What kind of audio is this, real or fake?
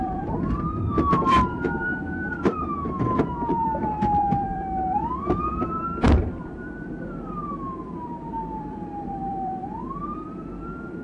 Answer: fake